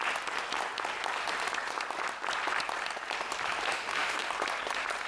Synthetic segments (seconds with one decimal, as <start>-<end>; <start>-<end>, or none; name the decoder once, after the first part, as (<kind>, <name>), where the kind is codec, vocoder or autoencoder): 3.7-4.3 (autoencoder, DAC-VAE)